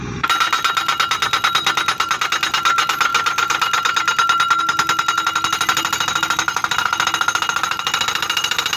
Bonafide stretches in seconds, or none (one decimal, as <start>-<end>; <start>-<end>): 0.0-8.8